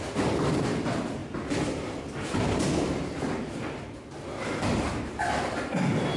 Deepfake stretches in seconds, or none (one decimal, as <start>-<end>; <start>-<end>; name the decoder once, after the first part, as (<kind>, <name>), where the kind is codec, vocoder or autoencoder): none